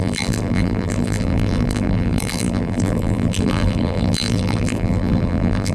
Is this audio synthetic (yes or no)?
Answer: yes